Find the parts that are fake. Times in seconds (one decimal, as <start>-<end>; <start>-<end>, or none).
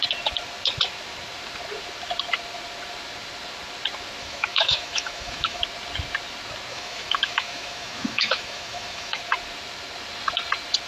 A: 4.2-5.6; 6.7-9.2